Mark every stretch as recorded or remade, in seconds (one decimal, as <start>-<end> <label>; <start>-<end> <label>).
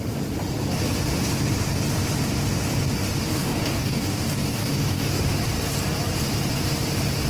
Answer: 0.0-3.3 recorded; 3.3-5.2 remade; 5.2-7.3 recorded